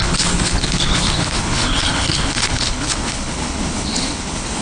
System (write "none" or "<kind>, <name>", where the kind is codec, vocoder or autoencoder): codec, HILCodec